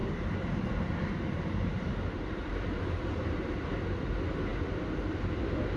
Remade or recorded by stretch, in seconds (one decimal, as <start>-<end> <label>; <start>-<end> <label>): 0.0-3.5 remade; 3.5-5.8 recorded